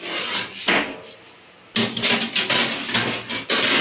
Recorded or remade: recorded